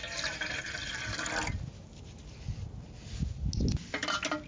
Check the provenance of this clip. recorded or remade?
recorded